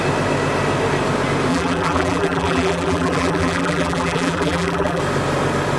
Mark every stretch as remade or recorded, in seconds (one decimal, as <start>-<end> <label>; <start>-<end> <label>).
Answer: 0.0-1.5 recorded; 1.5-5.0 remade; 5.0-5.8 recorded